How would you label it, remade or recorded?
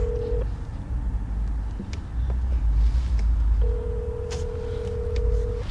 recorded